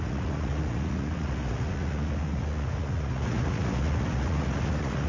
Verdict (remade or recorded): remade